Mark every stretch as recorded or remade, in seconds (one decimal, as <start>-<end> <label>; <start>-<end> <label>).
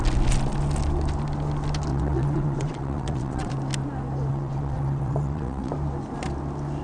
0.0-1.9 recorded; 1.9-3.5 remade; 3.5-4.3 recorded; 4.3-5.7 remade; 5.7-6.8 recorded